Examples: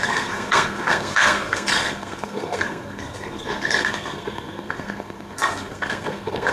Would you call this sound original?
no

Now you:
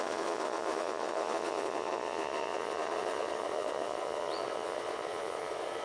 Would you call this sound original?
no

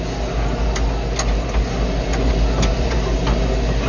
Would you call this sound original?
yes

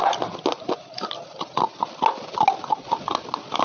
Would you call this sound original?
yes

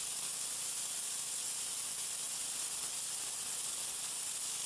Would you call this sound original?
yes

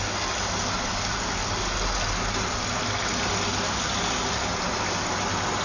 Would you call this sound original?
yes